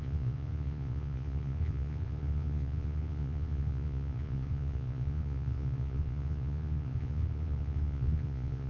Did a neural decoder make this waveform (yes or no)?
yes